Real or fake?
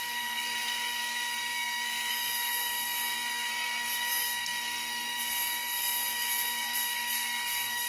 fake